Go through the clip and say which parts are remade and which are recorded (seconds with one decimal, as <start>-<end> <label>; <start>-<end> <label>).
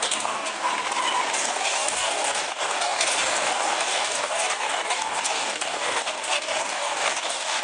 0.0-0.7 remade; 0.7-1.4 recorded; 1.4-7.6 remade